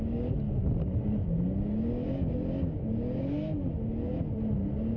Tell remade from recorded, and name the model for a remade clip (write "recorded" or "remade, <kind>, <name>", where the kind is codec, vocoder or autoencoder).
recorded